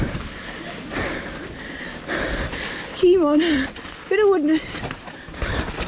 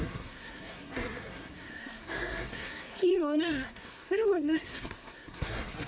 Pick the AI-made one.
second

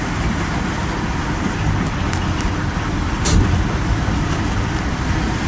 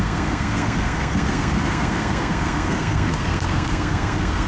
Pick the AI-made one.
second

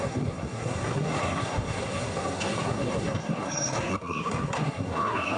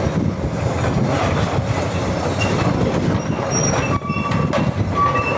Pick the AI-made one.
first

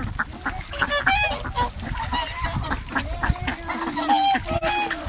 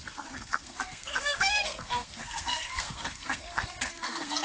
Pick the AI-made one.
second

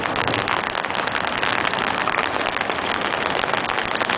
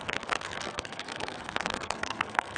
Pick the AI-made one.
second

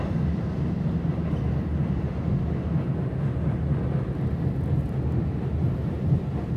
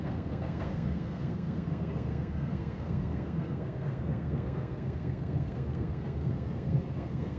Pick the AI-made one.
second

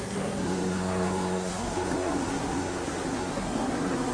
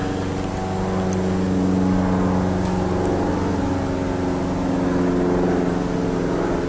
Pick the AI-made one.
first